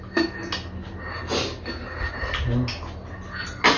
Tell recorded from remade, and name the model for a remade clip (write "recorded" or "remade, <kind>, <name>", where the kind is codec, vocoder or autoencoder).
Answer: recorded